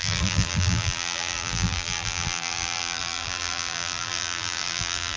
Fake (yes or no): yes